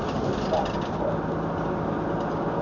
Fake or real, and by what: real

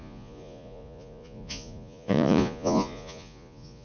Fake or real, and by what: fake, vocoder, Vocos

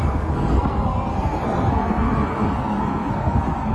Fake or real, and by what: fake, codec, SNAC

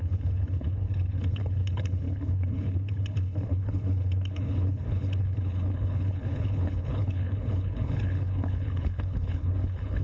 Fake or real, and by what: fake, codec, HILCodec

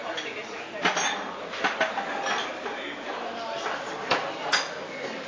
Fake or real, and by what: real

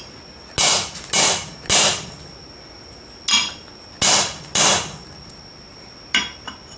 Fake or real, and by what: real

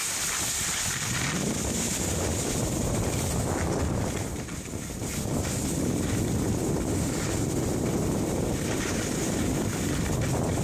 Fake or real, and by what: real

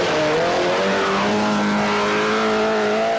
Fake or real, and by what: real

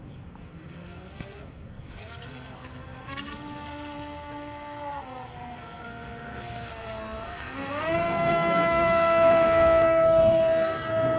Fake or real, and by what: fake, codec, SNAC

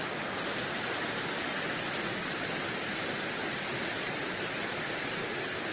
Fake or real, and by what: real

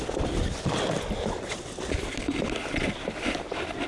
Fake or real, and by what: real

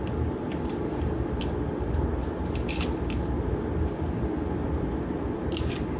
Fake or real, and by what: real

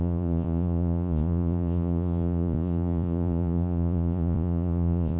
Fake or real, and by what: fake, vocoder, Vocos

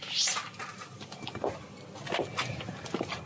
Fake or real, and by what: real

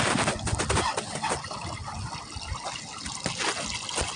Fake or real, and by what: real